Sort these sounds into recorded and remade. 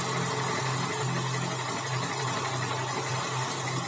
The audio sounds recorded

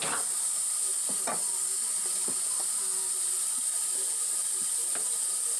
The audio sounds recorded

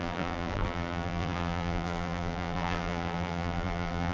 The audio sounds remade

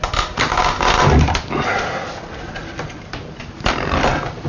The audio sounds recorded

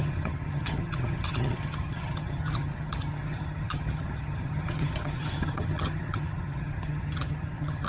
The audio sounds remade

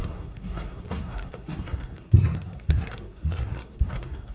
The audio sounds remade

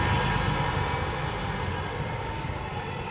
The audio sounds recorded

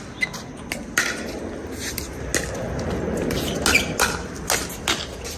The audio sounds recorded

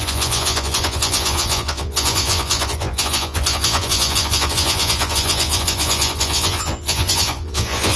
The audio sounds remade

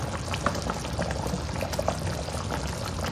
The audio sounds recorded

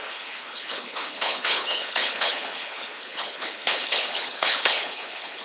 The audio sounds remade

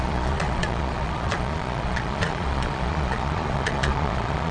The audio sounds remade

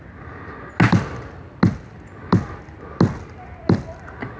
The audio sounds recorded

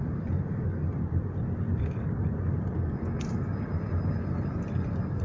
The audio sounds remade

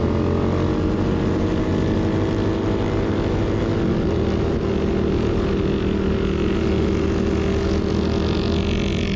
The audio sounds recorded